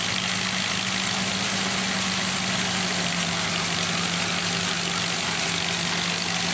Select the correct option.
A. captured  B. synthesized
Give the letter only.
A